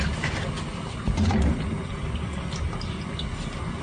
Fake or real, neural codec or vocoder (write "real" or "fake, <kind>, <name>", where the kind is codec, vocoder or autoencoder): real